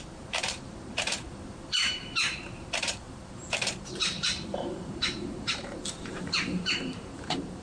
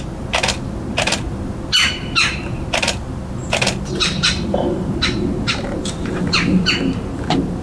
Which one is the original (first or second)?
second